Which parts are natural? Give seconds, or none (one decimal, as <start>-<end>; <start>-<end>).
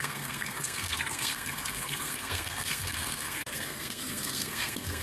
none